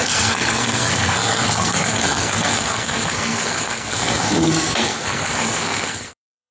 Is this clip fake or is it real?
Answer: fake